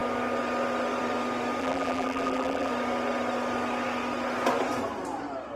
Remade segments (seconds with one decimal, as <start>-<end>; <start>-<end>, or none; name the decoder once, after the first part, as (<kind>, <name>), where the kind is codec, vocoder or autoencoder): 1.6-2.7 (vocoder, BigVGAN v2)